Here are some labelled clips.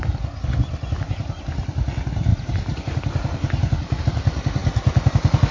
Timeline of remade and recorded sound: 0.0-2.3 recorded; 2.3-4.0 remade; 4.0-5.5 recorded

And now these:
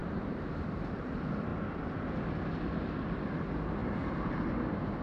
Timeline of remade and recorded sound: 0.0-1.1 remade; 1.1-3.8 recorded; 3.8-5.0 remade